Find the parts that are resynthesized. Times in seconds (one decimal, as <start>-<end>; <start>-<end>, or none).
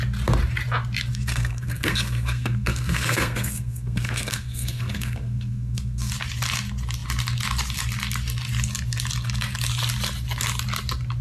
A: 1.1-6.1